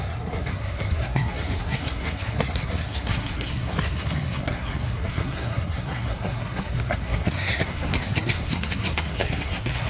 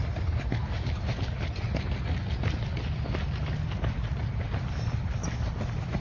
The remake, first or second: first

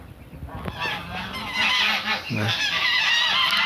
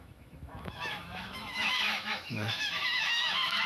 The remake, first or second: second